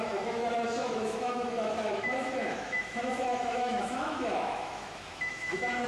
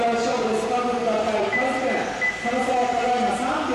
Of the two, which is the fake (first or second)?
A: first